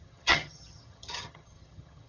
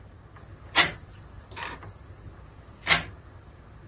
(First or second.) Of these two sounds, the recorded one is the second